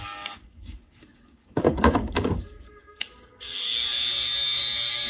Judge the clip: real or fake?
fake